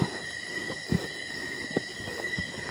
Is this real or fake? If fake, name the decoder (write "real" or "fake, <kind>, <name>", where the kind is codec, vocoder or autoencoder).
real